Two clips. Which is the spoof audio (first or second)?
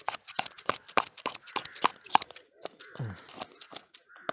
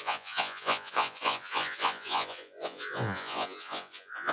second